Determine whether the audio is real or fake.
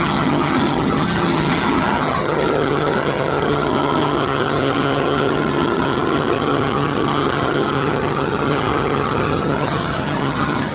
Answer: fake